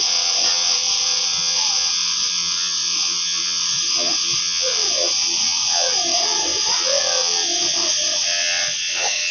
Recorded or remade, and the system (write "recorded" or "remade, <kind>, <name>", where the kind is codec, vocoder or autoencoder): remade, vocoder, WaveNeXt